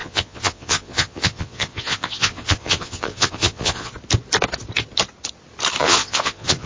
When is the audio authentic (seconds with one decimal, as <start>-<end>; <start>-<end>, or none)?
3.9-5.8